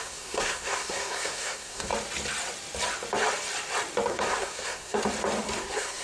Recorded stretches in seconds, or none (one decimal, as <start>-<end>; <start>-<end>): 1.9-4.1; 5.0-5.6